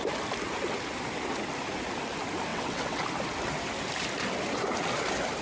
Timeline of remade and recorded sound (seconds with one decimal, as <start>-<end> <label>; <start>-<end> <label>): 0.0-2.5 recorded; 2.5-3.0 remade; 3.0-5.4 recorded